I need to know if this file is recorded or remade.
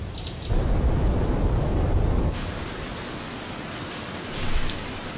remade